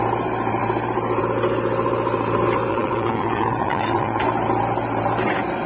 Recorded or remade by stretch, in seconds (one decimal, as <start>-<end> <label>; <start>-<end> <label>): 0.0-2.7 recorded; 2.7-4.2 remade; 4.2-5.7 recorded